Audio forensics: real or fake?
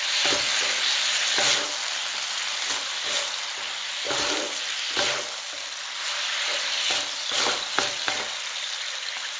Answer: real